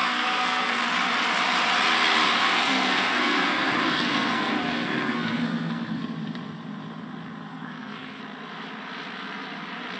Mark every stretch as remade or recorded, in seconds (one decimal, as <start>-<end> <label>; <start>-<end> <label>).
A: 0.0-0.8 remade; 0.8-2.4 recorded; 2.4-6.0 remade; 6.0-7.5 recorded; 7.5-8.2 remade; 8.2-10.0 recorded